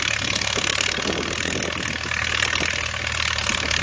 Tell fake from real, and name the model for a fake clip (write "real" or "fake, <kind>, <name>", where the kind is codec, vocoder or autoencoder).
real